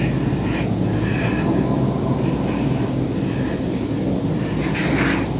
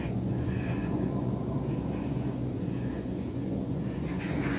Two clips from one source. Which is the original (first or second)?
first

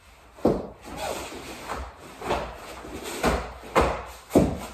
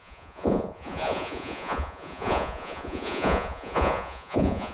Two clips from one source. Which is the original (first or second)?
first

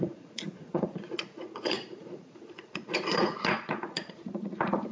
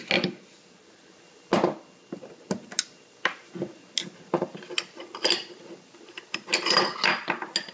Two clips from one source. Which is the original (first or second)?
second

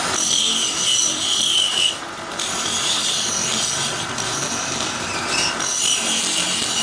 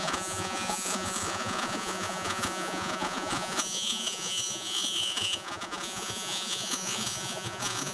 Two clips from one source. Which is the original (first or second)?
first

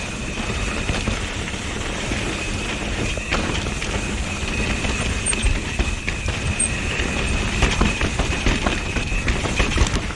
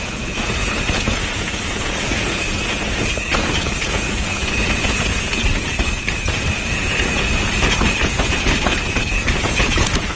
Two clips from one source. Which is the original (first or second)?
first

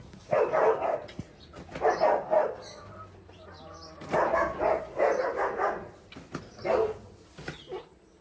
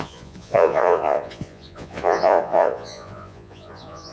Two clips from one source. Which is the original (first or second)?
first